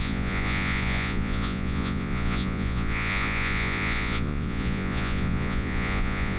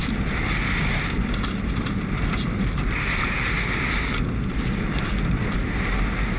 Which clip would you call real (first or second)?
second